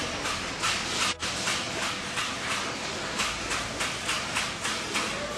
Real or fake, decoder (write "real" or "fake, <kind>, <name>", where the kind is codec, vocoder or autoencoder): real